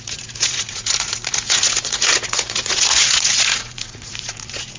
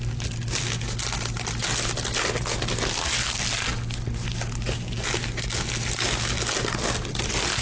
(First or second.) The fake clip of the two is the first